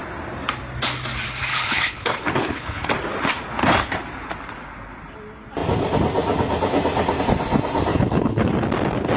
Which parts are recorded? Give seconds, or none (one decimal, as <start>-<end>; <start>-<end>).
0.0-1.5; 2.9-7.9; 8.5-9.2